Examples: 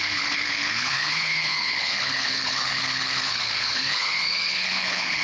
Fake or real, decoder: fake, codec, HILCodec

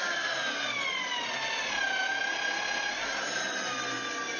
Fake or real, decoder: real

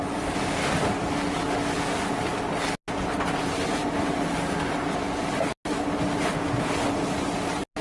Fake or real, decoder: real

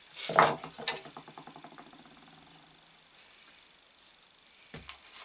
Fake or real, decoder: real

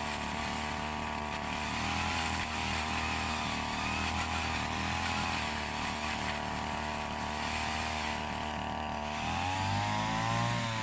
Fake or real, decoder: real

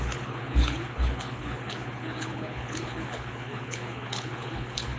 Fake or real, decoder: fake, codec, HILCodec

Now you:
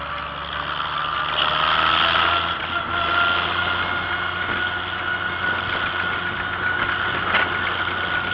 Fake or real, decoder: real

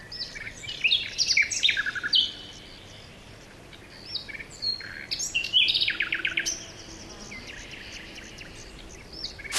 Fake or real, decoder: real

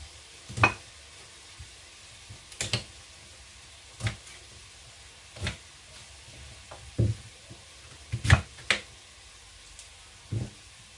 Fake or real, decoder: real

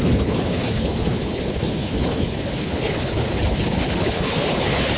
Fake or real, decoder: fake, codec, HILCodec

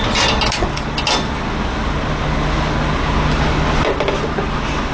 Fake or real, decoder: real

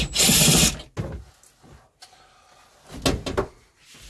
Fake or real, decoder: real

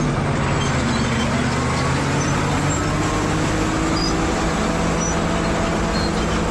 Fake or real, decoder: real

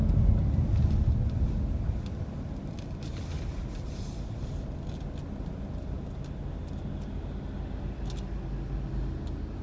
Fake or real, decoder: real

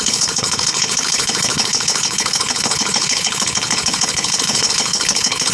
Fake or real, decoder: fake, codec, HILCodec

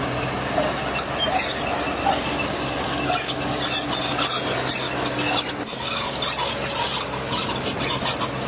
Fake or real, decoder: real